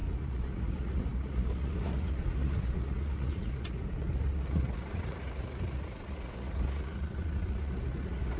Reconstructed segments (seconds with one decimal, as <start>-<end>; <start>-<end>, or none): 0.0-8.4